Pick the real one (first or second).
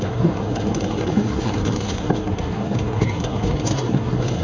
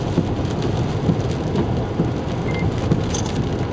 second